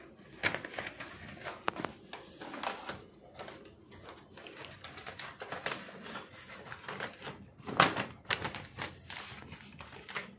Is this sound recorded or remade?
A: recorded